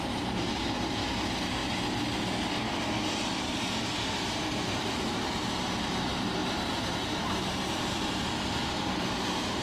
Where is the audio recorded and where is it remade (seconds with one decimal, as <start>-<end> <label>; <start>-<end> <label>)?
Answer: 0.0-1.6 remade; 1.6-3.4 recorded; 3.4-9.6 remade